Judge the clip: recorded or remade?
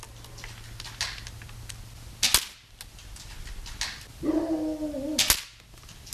recorded